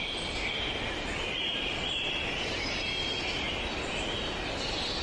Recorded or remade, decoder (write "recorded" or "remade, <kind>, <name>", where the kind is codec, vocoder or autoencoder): recorded